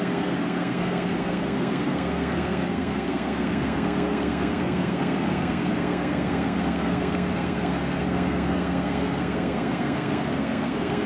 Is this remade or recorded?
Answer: remade